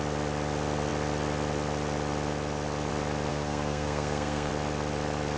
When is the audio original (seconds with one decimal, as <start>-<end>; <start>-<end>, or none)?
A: 0.0-3.3; 4.5-5.4